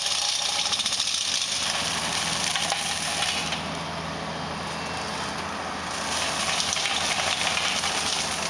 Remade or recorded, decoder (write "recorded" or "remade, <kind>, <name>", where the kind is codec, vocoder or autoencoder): recorded